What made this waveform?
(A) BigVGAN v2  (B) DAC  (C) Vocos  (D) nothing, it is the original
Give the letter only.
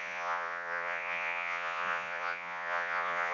C